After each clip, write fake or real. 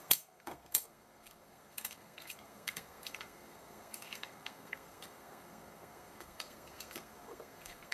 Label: fake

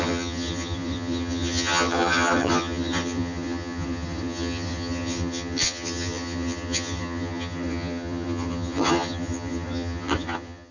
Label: fake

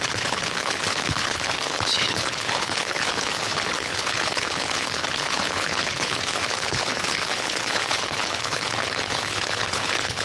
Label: fake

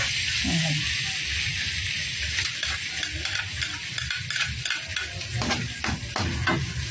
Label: real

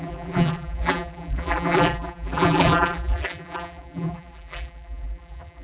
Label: fake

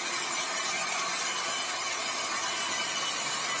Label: real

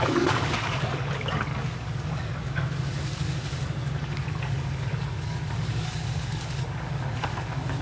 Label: fake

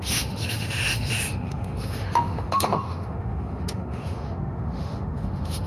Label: fake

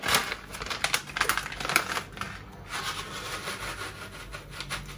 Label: real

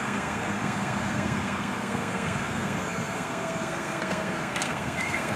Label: fake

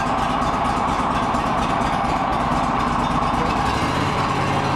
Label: real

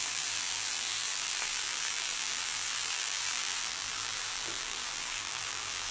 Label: fake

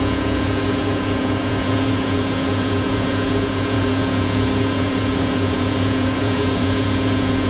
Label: fake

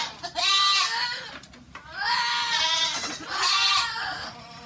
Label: real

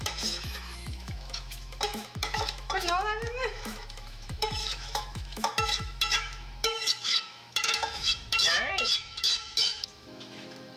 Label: fake